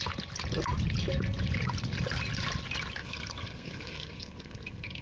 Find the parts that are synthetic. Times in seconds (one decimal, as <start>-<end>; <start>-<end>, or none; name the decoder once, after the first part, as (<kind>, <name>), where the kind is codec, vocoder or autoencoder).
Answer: 3.0-5.0 (codec, SNAC)